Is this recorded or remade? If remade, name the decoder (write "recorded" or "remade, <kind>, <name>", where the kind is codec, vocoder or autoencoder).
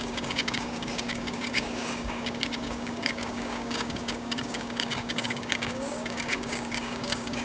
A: remade, codec, DAC